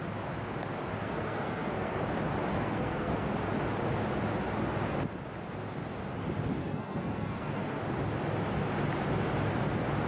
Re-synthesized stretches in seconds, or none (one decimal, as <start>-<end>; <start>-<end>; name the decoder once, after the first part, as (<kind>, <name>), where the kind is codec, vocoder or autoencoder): 1.0-2.0 (codec, SNAC); 2.5-3.3; 6.6-7.8